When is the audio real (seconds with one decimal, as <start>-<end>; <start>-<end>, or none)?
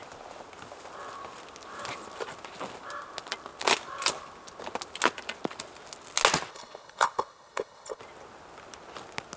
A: 0.0-6.5; 8.0-9.4